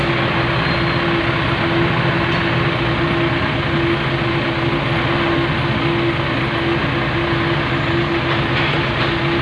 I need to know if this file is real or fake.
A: real